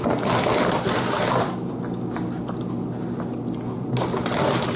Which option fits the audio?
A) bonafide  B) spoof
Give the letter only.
A